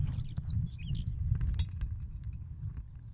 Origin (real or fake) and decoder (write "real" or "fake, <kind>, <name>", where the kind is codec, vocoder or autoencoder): real